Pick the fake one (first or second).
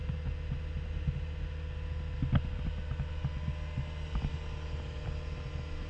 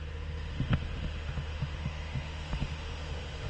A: second